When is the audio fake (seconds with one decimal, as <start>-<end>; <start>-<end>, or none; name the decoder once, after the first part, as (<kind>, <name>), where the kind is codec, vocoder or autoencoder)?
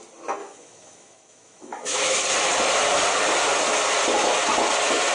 0.4-2.1 (autoencoder, DAC-VAE)